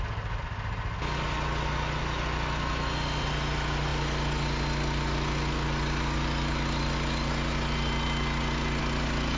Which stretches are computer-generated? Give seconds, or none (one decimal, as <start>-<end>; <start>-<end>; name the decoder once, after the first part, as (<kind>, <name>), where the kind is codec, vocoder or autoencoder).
none